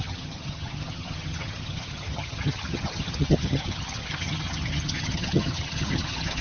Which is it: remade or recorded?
remade